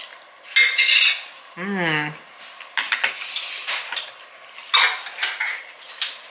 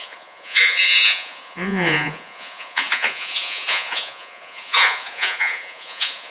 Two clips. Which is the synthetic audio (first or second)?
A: second